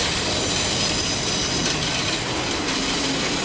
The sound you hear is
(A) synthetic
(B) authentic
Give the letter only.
B